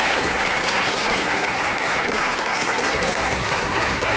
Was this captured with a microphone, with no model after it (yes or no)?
no